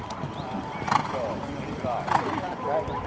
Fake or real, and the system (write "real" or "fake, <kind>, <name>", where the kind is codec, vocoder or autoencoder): real